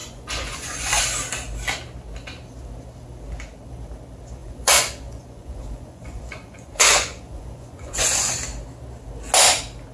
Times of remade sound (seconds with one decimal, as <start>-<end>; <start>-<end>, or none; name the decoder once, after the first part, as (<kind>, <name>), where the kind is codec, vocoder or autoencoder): 0.0-1.0 (vocoder, Vocos); 4.4-8.3